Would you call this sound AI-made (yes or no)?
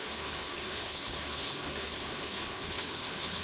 yes